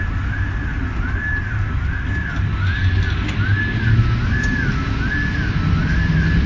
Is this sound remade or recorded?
recorded